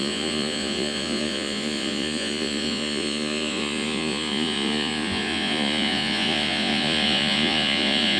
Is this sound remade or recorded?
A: remade